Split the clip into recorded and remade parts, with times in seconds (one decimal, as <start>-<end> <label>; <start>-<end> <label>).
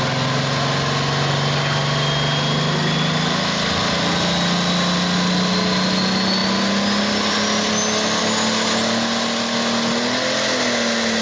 0.0-11.2 recorded